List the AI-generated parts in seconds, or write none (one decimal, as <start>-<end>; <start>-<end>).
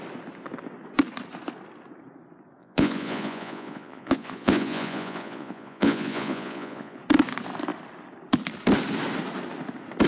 2.6-7.0